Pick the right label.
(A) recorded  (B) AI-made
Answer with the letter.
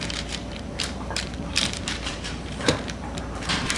B